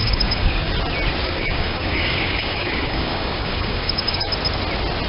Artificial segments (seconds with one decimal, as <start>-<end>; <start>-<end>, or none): 0.0-0.7; 1.2-4.3